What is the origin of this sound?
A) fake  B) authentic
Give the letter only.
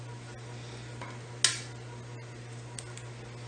B